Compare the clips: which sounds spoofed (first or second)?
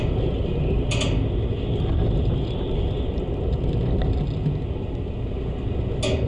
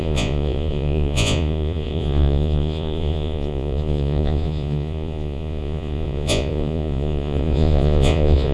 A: second